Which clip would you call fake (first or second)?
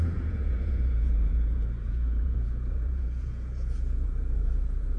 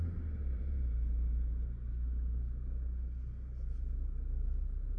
first